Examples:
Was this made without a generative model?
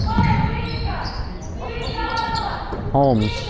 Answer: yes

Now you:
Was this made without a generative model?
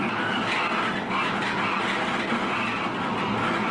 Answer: yes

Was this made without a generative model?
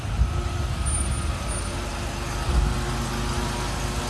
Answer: yes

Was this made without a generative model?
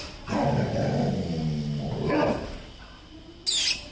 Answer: yes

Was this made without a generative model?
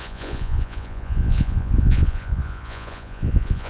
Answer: no